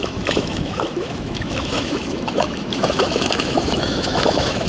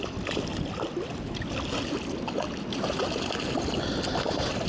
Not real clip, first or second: first